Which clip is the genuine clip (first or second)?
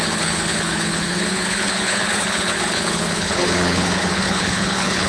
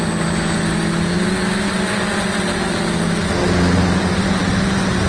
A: second